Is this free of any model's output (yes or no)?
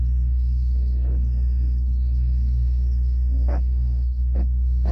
no